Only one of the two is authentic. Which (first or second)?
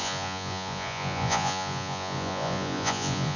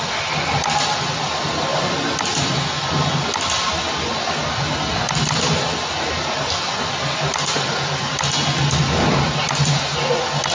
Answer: second